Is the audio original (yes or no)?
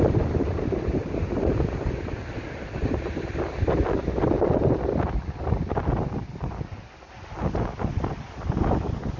yes